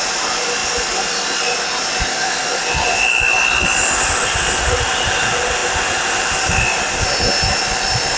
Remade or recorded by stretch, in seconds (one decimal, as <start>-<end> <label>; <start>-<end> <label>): 0.0-8.2 recorded